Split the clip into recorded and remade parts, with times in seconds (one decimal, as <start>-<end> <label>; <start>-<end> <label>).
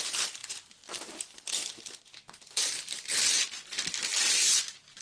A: 0.0-0.4 recorded; 0.4-2.4 remade; 2.4-4.1 recorded; 4.1-5.0 remade